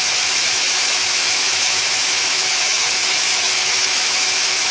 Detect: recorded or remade remade